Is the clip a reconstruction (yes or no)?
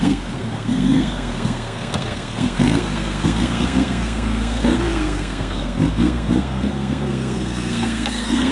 yes